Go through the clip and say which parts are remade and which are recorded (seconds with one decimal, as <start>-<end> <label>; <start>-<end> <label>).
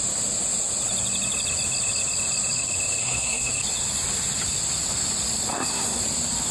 0.0-3.0 recorded; 3.0-3.5 remade; 3.5-5.5 recorded; 5.5-6.0 remade; 6.0-6.5 recorded